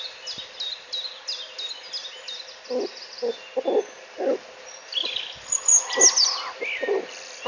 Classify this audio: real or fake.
real